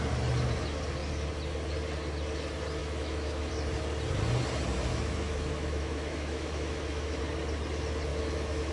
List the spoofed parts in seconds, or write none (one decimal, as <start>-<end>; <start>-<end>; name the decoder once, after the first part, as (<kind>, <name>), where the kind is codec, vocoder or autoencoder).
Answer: 2.8-3.5 (autoencoder, DAC-VAE); 4.9-7.2; 8.1-8.7